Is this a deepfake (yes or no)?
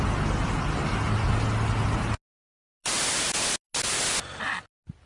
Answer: no